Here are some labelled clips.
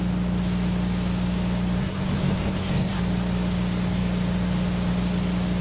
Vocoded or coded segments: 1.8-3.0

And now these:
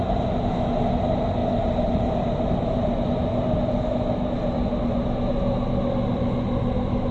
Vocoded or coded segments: 1.4-3.0

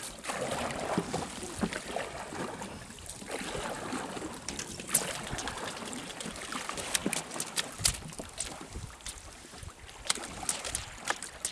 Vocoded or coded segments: none

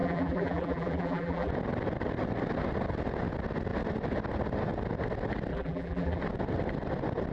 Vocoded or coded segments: 0.0-1.5; 5.5-6.2